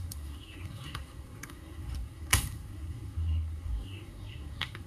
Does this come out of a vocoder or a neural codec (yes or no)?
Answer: yes